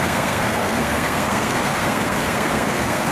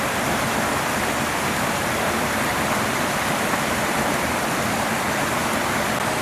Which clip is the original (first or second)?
second